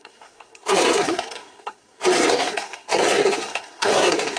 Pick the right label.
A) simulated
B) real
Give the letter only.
A